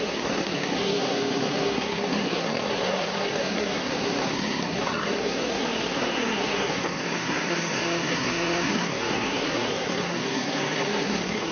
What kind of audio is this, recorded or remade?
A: remade